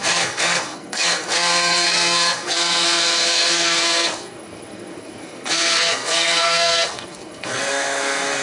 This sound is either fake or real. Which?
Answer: fake